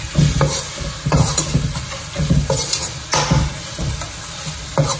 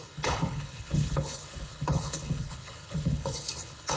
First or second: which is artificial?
second